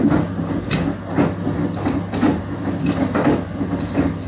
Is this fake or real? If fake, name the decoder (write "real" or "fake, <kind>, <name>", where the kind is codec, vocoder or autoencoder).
real